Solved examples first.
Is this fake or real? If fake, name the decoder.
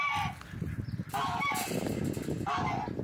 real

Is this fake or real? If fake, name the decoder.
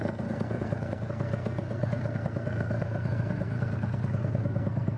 fake, codec, SNAC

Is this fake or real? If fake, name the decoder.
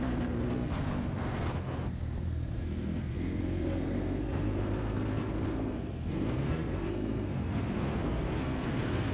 fake, codec, SNAC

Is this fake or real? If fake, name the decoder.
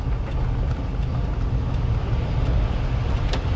real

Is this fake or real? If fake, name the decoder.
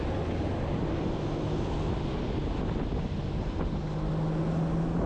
real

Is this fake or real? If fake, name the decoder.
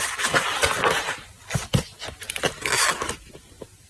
real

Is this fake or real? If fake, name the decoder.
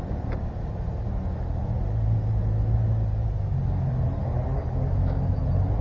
real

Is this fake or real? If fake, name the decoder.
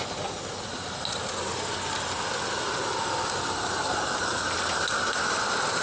real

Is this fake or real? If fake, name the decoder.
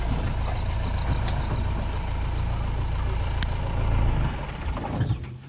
real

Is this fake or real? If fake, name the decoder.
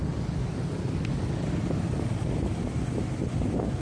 real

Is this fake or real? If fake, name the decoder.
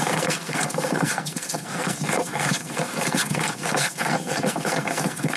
fake, codec, SNAC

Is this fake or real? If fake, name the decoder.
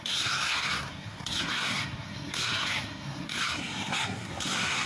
fake, codec, SNAC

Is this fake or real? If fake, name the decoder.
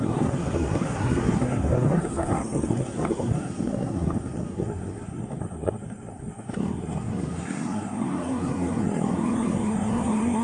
fake, codec, SNAC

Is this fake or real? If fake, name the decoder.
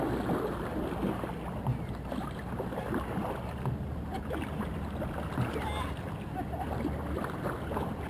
real